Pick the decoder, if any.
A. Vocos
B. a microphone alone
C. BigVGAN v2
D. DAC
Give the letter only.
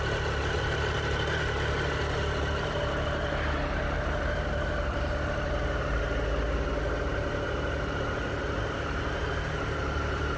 B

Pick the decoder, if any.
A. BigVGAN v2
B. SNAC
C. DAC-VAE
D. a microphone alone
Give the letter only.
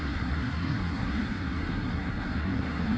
B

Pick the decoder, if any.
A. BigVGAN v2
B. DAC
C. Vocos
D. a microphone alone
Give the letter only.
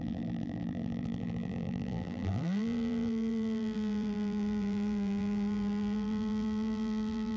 A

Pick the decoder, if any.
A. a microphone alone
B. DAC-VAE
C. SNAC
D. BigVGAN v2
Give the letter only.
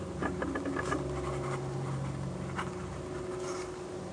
A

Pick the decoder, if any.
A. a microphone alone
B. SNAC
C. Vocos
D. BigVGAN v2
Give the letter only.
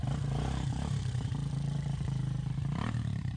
D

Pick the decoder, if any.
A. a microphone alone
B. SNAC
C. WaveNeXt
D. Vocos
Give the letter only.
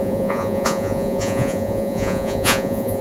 D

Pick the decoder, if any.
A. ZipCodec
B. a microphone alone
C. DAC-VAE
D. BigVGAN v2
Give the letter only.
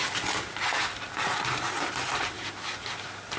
B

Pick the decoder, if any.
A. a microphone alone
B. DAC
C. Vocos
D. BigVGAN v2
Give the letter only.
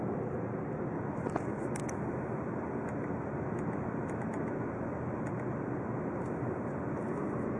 A